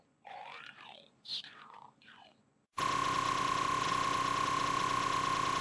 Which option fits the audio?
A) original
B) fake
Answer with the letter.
B